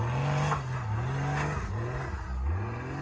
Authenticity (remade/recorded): recorded